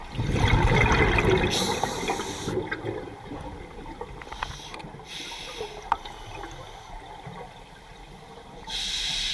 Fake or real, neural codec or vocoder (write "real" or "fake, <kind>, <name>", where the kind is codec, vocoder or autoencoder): real